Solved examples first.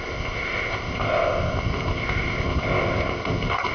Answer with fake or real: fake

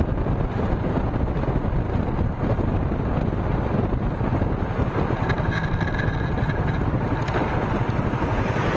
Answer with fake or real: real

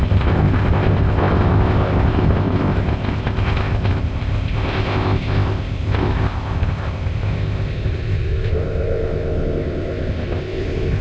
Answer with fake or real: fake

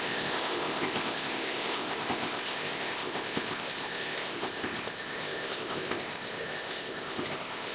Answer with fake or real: fake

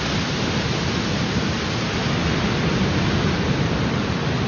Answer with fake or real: real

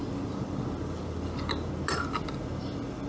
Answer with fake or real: real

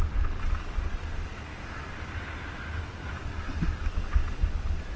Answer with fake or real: real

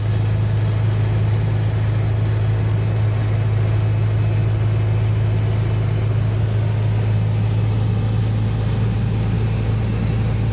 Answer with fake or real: real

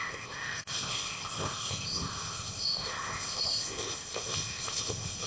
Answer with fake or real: fake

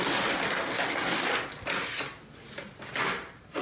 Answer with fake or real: real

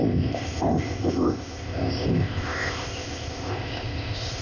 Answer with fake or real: fake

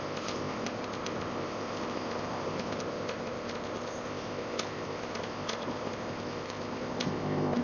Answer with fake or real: fake